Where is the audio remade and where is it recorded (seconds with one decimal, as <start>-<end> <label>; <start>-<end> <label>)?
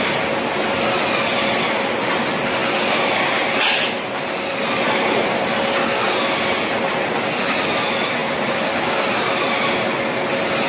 0.0-10.7 recorded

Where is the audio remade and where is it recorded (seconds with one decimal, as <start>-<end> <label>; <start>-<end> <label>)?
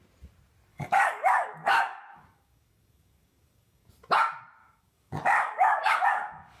0.0-0.7 recorded; 0.7-3.9 remade; 3.9-4.6 recorded; 4.6-6.6 remade